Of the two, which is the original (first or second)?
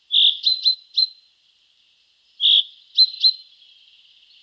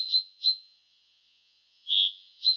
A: first